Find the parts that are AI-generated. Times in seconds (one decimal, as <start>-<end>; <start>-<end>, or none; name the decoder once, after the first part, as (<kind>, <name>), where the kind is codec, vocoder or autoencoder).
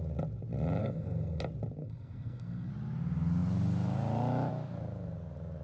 0.8-1.4 (codec, SNAC); 1.8-2.7